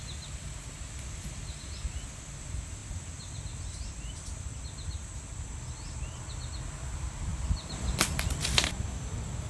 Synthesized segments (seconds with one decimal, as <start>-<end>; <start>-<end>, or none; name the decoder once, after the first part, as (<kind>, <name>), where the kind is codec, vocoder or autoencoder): none

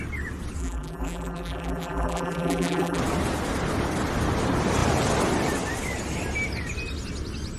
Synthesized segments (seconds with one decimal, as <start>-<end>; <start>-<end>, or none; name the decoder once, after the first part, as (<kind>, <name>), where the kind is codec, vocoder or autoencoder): 0.6-3.0 (vocoder, BigVGAN v2)